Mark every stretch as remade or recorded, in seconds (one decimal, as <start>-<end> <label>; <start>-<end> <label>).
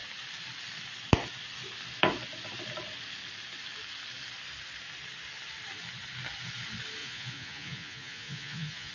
0.0-7.0 recorded; 7.0-8.9 remade